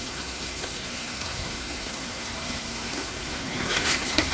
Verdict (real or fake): fake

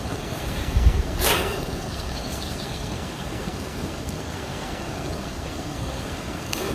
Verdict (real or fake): fake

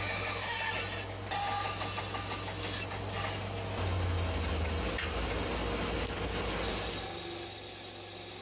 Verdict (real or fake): real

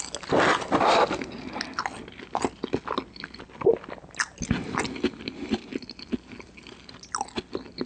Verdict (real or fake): real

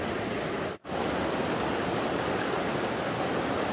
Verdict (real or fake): real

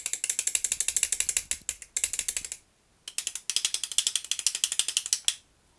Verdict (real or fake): real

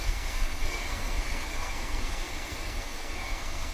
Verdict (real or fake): fake